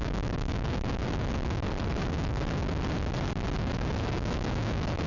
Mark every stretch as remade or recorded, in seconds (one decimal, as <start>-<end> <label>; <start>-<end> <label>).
0.0-1.0 remade; 1.0-4.1 recorded; 4.1-5.1 remade